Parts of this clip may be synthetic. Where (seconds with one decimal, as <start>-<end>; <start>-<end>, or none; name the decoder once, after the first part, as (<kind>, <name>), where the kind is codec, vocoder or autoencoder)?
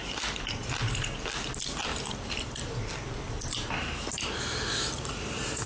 0.0-1.2 (vocoder, BigVGAN v2); 1.9-4.8